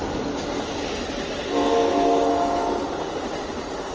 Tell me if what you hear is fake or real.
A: real